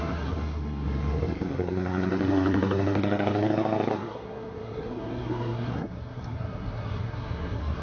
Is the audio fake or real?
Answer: fake